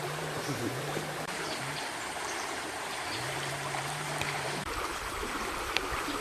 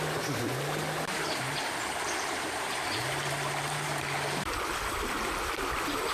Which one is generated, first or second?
first